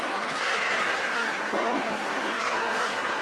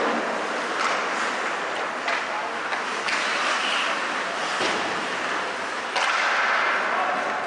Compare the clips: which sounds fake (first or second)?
first